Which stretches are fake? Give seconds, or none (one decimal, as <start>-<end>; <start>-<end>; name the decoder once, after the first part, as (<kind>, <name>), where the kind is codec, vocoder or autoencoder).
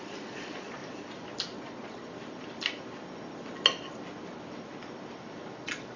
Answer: 0.0-0.8 (vocoder, Vocos); 1.6-2.0; 5.6-6.0